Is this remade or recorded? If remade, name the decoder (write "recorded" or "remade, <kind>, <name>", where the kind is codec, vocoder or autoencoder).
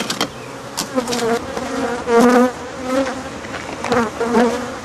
recorded